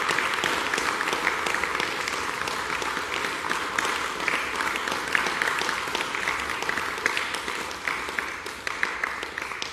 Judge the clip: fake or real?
real